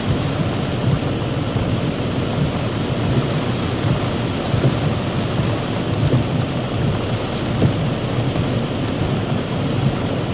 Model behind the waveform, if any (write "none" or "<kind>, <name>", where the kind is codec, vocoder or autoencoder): none